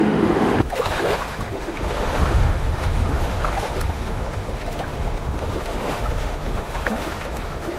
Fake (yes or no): yes